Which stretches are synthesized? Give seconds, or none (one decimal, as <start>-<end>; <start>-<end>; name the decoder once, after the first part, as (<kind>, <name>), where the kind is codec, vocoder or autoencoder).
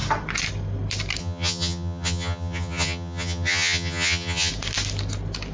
1.2-4.5 (vocoder, HiFi-GAN)